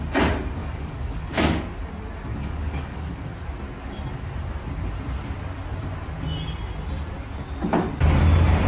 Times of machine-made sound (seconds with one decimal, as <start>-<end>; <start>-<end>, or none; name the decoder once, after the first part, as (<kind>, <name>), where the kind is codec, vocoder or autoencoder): 0.6-1.9 (codec, DAC); 2.3-3.1